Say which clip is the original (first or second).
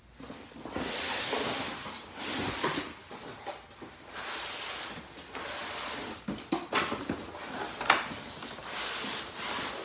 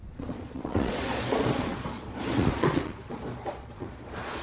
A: first